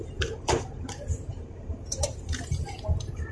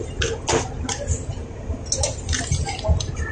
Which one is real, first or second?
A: second